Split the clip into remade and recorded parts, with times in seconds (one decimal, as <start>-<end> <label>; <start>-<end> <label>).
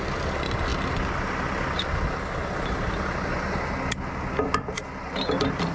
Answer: 0.0-5.7 recorded